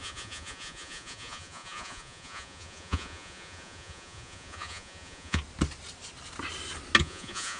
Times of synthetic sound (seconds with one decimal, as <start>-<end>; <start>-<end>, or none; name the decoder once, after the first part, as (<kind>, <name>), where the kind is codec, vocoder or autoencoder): 0.0-5.4 (vocoder, Vocos); 7.0-7.6